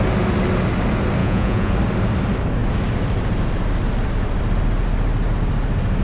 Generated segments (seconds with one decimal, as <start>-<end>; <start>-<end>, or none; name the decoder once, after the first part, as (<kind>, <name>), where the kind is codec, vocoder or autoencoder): 1.2-1.7 (vocoder, Vocos)